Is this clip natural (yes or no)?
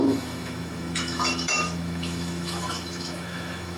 no